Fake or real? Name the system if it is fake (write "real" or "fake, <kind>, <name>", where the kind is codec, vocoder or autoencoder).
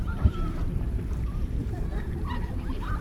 fake, vocoder, BigVGAN v2